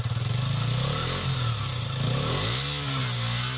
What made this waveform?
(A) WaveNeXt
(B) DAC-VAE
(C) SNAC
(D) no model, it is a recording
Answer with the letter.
D